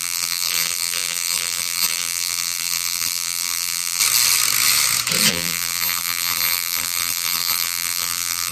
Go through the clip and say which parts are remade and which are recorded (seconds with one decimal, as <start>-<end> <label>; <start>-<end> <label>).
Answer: 0.0-4.0 remade; 4.0-5.3 recorded; 5.3-8.5 remade